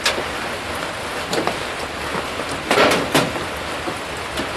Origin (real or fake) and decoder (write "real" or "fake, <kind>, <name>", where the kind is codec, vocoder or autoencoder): real